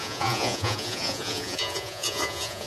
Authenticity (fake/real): fake